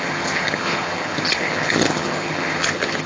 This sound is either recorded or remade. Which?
remade